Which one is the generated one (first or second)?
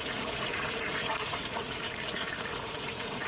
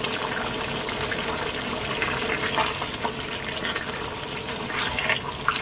first